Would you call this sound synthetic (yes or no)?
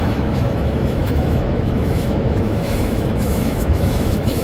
yes